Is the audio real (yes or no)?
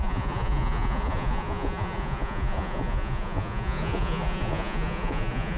no